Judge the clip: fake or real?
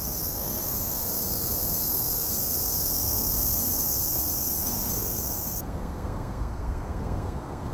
fake